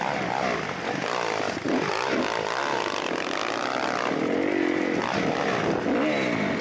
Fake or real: real